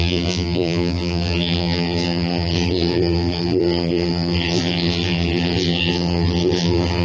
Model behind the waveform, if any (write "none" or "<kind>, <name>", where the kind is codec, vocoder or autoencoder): vocoder, BigVGAN v2